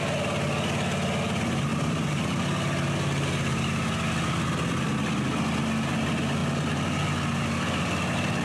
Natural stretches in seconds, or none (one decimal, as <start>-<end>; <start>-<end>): 0.0-1.7; 2.4-8.4